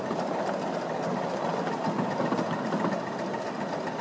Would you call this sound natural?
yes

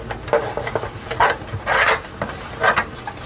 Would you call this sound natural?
yes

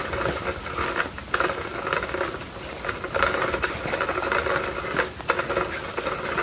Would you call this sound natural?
yes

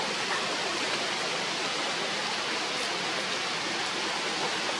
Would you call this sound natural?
yes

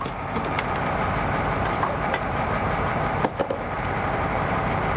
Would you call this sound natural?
no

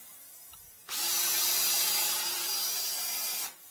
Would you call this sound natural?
yes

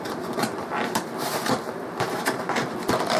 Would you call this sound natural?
no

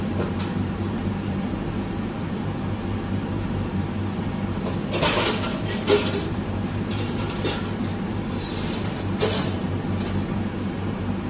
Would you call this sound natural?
no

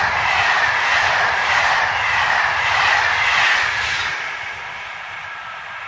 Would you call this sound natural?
yes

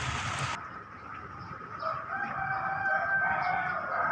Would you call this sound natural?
yes